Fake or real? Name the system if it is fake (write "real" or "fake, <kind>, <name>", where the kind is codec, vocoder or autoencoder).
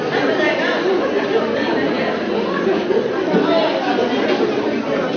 real